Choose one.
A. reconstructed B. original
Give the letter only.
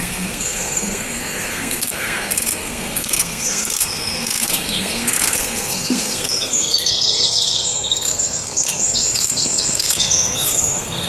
A